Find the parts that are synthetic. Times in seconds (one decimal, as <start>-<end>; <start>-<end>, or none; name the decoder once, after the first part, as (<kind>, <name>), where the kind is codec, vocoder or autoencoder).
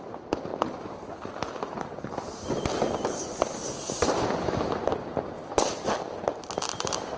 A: none